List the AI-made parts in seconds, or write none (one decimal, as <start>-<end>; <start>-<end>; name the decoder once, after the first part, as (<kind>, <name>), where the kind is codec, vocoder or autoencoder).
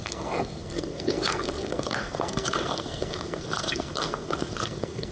0.0-5.1 (codec, SNAC)